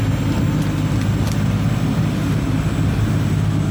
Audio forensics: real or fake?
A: real